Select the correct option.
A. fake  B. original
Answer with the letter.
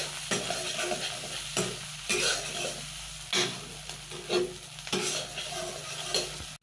B